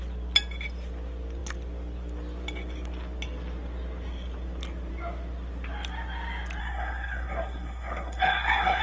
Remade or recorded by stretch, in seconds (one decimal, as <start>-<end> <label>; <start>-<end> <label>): 0.0-6.6 recorded; 6.6-8.8 remade